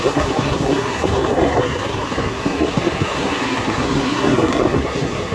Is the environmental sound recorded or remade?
remade